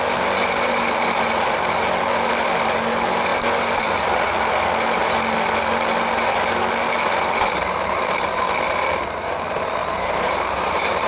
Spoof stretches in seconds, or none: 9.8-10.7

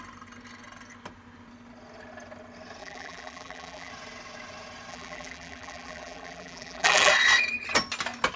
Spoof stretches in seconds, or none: 2.8-3.9; 4.9-7.1

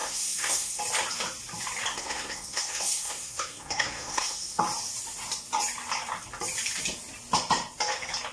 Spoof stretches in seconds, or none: 0.0-0.8; 1.9-4.6

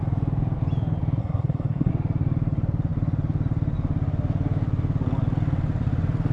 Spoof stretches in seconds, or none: 1.2-1.9

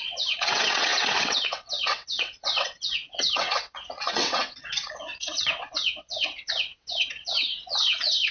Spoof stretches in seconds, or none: 0.0-8.3